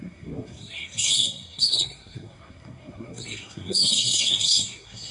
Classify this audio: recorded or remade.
remade